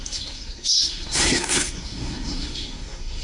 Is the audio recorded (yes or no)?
no